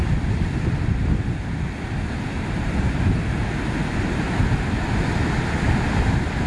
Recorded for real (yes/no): yes